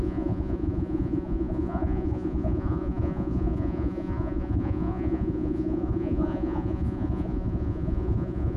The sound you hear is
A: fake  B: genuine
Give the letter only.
A